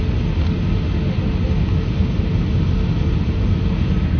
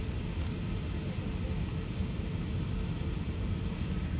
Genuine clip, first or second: first